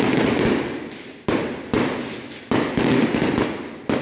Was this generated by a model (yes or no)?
no